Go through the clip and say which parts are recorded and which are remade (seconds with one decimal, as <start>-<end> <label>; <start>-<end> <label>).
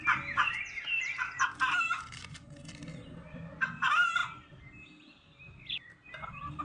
0.0-6.6 recorded